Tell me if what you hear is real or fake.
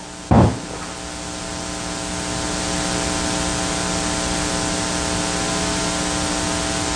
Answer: real